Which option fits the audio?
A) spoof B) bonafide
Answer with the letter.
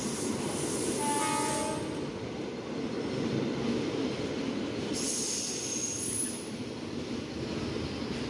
B